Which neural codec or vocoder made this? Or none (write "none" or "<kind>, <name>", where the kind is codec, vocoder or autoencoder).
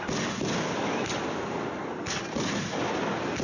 none